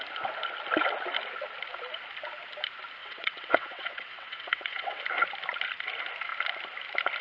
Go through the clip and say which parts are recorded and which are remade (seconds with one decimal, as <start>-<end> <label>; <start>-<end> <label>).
0.0-3.0 recorded; 3.0-5.0 remade; 5.0-7.2 recorded